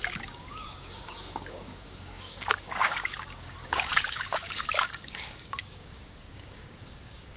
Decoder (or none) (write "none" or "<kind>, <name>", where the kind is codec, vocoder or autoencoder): codec, DAC